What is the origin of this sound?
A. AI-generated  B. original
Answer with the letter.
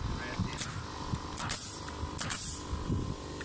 B